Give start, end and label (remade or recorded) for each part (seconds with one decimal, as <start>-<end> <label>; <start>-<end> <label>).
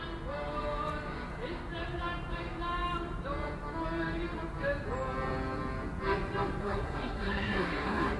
0.0-6.6 recorded; 6.6-8.2 remade